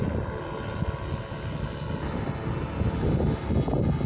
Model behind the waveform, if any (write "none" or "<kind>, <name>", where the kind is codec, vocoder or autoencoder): none